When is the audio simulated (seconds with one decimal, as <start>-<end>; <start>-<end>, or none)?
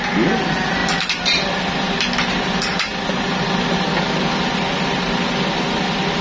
none